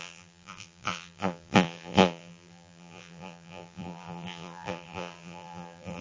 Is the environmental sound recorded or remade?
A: remade